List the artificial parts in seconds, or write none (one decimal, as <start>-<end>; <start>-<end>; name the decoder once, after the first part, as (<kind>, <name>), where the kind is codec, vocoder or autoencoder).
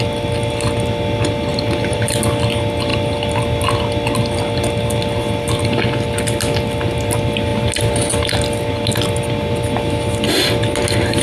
1.5-2.1 (vocoder, BigVGAN v2)